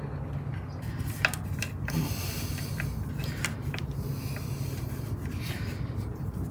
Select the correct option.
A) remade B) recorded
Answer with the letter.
B